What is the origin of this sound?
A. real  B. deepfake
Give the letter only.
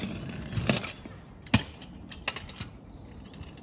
A